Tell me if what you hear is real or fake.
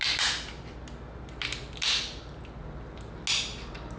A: real